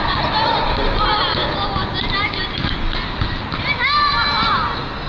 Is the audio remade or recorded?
recorded